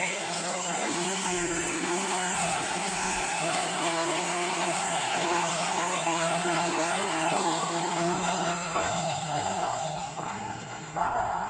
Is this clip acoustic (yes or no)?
no